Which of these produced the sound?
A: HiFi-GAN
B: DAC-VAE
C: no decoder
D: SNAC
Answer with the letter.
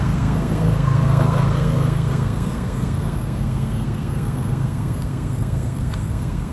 D